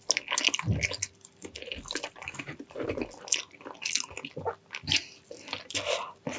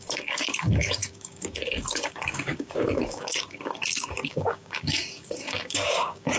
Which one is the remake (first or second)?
second